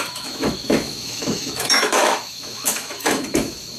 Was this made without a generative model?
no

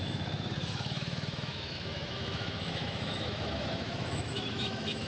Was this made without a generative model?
no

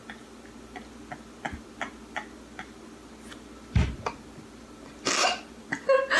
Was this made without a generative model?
yes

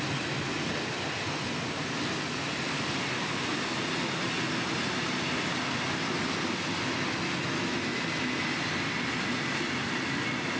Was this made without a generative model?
yes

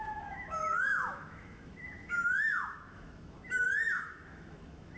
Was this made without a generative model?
no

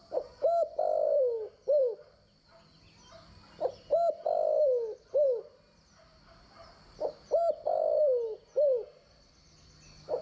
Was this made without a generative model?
yes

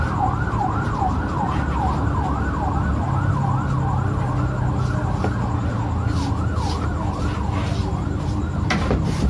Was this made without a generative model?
yes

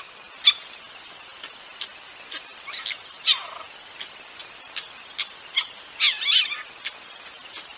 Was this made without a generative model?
yes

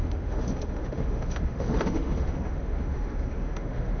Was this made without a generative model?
no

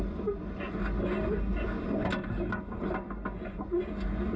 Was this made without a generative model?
yes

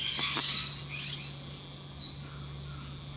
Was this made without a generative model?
yes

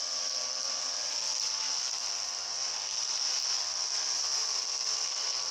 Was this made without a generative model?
yes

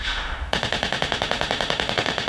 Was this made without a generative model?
no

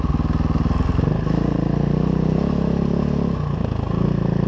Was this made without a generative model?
yes